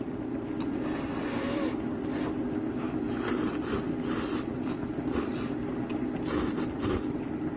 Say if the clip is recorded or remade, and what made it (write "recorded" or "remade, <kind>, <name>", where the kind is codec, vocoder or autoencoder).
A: recorded